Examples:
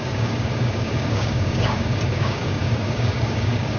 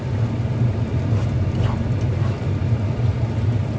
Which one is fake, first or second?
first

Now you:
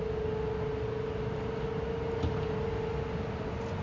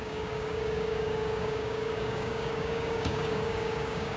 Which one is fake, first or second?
second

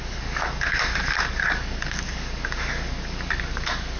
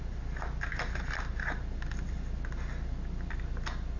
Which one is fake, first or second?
first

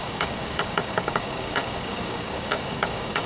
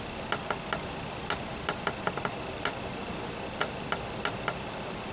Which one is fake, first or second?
first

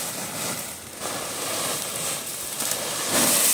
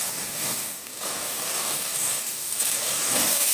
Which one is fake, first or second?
second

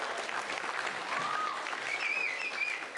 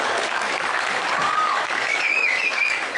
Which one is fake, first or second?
second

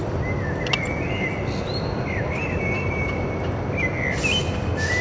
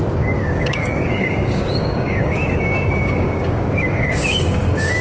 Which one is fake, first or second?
second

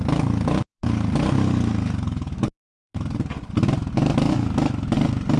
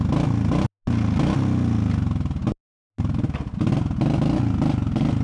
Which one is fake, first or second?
first